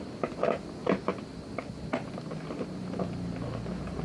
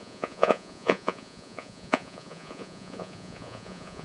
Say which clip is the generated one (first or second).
second